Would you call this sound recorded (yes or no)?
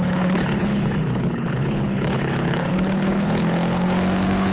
no